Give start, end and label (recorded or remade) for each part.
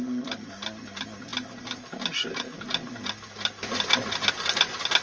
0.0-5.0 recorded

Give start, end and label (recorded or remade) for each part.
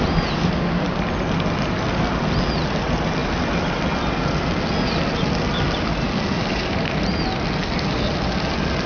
0.0-8.9 recorded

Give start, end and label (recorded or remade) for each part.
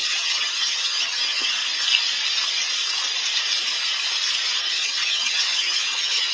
0.0-1.6 remade; 1.6-4.6 recorded; 4.6-6.3 remade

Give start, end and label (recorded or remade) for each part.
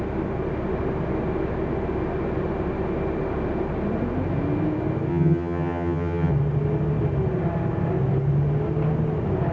0.0-5.1 recorded; 5.1-6.3 remade; 6.3-9.5 recorded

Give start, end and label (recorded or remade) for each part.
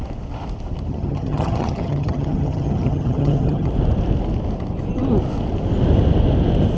0.0-0.9 recorded; 0.9-3.7 remade; 3.7-6.8 recorded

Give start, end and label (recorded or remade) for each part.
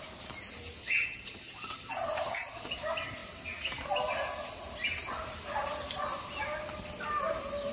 0.0-0.8 recorded; 0.8-2.7 remade; 2.7-7.7 recorded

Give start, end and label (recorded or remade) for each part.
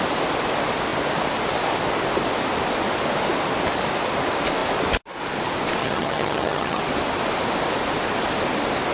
0.0-5.8 recorded; 5.8-6.8 remade; 6.8-8.9 recorded